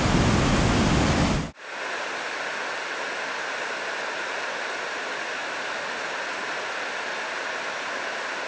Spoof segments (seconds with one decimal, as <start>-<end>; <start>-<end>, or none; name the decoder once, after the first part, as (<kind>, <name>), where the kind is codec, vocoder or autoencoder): 5.4-6.1 (vocoder, BigVGAN v2)